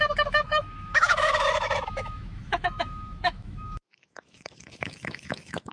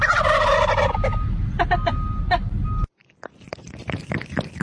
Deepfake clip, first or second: first